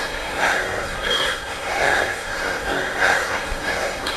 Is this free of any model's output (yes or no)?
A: no